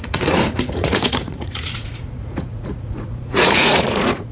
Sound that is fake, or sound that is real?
fake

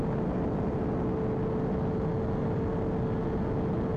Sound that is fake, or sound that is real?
real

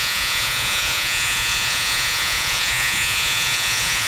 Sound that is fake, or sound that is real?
fake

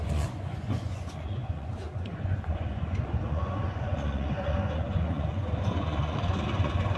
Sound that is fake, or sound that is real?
fake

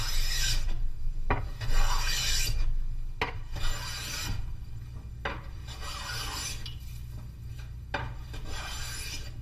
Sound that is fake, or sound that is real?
real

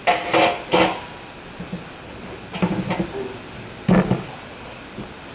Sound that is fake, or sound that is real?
real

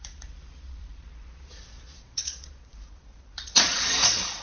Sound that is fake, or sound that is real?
fake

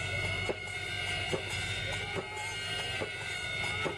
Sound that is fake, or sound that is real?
real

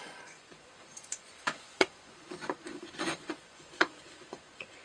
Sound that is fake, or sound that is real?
fake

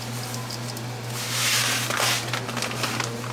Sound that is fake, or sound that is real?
real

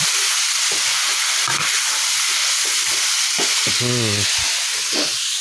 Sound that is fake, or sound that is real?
real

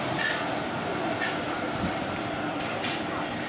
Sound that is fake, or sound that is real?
real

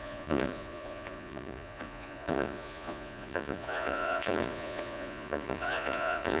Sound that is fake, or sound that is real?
fake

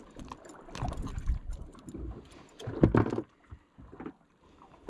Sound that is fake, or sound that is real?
real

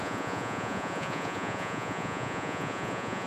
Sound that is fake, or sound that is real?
fake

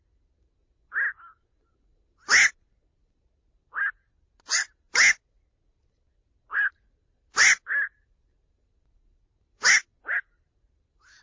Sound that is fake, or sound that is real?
real